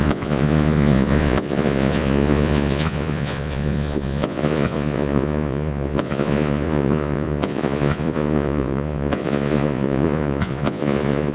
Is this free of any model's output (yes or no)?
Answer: no